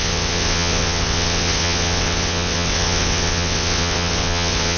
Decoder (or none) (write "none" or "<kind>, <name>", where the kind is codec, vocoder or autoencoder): vocoder, WaveNeXt